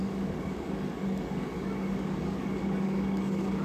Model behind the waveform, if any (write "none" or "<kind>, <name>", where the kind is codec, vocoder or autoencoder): codec, DAC